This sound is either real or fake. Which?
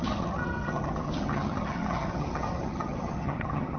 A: fake